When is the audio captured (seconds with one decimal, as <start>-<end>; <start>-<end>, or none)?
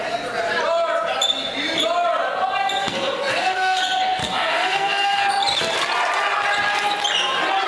0.0-2.8; 3.8-4.2; 5.3-7.7